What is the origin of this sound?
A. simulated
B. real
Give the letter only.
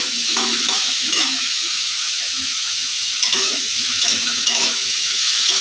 A